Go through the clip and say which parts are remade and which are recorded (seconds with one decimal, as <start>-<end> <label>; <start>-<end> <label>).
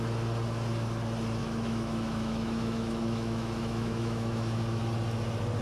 0.0-1.4 recorded; 1.4-4.8 remade; 4.8-5.6 recorded